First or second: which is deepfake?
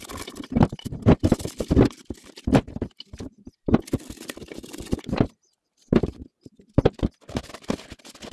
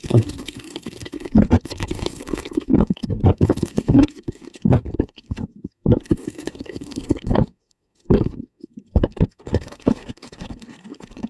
second